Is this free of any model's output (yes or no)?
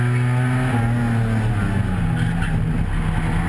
yes